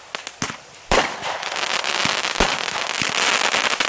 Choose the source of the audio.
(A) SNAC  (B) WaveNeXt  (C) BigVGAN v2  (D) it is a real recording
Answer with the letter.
D